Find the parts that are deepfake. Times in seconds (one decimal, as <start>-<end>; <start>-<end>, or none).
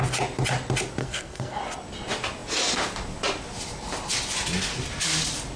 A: 1.0-1.6